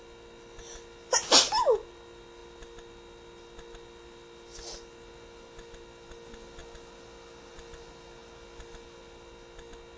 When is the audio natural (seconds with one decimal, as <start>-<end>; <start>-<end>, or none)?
0.0-10.0

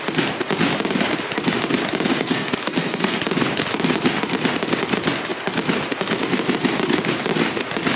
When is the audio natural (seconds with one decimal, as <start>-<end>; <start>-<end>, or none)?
0.0-2.1; 3.2-8.0